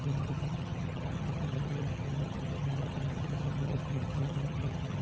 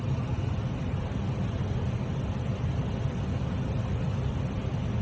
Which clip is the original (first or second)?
second